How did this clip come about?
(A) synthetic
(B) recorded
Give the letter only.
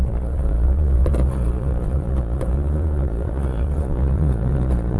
A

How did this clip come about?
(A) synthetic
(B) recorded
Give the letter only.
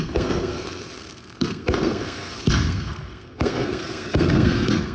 A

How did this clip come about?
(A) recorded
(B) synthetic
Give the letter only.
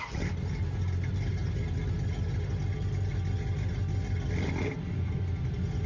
A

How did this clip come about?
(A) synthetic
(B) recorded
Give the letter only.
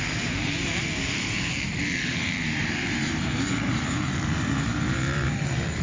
A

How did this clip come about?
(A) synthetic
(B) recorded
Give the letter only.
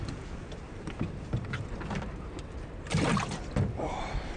A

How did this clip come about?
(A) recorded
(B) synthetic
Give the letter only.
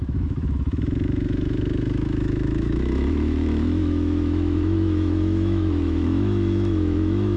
B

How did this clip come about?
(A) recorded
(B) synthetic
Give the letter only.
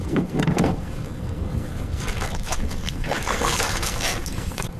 B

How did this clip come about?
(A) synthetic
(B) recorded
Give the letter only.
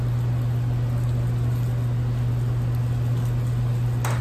B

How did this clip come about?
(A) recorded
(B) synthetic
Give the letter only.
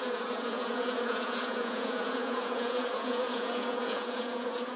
B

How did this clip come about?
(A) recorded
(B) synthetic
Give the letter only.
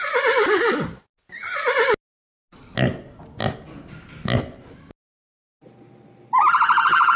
A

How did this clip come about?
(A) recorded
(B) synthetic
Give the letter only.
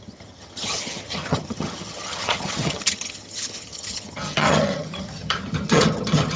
B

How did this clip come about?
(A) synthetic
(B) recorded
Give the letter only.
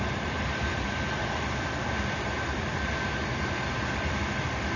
B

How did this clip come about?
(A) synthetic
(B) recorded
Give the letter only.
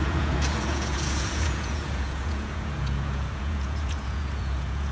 A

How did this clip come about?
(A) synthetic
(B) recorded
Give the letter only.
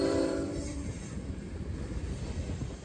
A